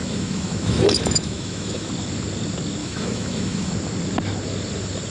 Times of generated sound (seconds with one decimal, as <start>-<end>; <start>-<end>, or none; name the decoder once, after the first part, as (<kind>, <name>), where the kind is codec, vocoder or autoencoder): 0.0-1.9 (autoencoder, DAC-VAE); 2.8-3.7